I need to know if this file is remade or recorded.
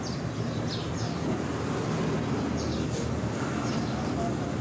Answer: recorded